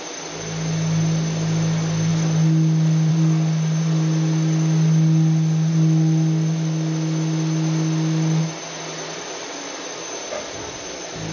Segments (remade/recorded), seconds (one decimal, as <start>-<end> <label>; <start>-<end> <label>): 0.0-11.3 recorded